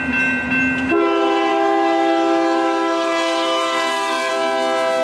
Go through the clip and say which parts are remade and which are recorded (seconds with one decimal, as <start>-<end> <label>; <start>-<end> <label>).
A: 0.0-1.5 recorded; 1.5-4.3 remade; 4.3-5.0 recorded